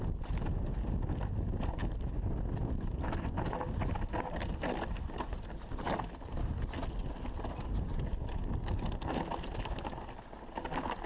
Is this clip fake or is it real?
real